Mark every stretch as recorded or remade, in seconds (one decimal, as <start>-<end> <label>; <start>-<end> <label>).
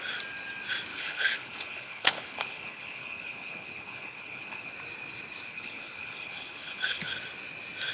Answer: 0.0-0.9 recorded; 0.9-4.7 remade; 4.7-5.5 recorded; 5.5-7.1 remade; 7.1-7.9 recorded